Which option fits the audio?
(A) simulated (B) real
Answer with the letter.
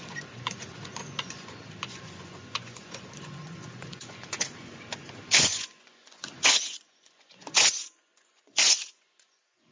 A